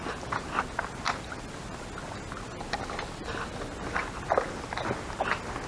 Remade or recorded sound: recorded